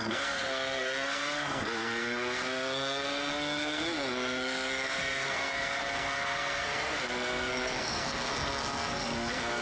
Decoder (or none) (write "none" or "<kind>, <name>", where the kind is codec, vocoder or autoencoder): codec, SNAC